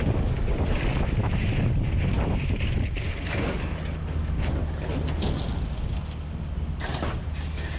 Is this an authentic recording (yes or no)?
yes